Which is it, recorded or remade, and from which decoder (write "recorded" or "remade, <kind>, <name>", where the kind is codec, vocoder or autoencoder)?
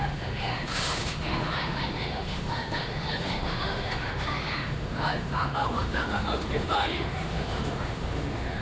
remade, autoencoder, DAC-VAE